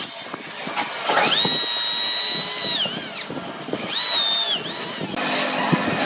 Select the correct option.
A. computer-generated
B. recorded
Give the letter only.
B